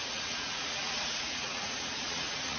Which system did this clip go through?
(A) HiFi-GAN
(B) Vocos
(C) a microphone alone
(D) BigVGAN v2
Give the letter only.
B